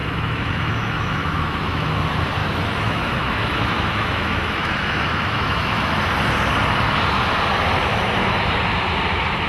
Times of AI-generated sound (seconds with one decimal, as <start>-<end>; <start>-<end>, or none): 0.0-2.0; 2.4-6.0; 7.9-8.4